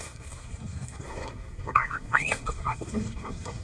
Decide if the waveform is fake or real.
fake